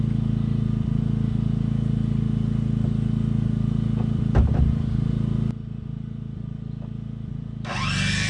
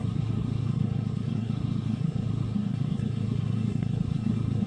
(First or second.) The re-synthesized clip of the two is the second